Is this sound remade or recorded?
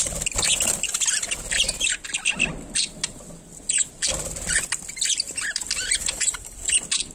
recorded